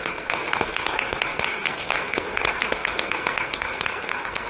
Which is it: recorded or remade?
remade